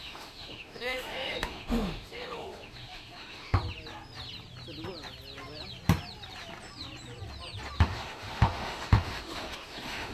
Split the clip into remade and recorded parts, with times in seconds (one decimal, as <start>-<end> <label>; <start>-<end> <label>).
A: 0.0-3.6 remade; 3.6-7.8 recorded; 7.8-10.1 remade